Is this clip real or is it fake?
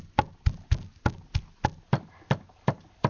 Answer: real